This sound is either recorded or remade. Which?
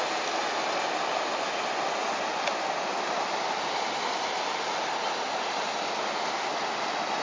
recorded